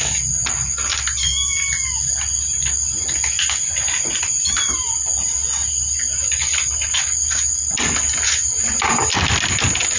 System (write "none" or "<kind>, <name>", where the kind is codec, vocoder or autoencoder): none